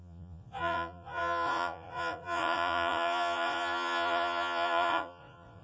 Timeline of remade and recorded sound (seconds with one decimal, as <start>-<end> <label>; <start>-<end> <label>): 0.0-5.6 remade